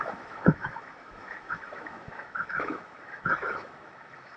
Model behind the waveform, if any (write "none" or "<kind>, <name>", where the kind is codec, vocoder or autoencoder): autoencoder, DAC-VAE